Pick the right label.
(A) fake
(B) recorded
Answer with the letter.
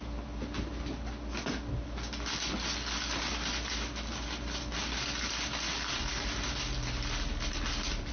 B